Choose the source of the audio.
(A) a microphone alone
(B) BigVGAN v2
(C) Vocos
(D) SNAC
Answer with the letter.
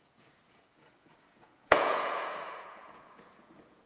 C